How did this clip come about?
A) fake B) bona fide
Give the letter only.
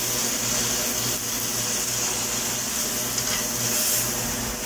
B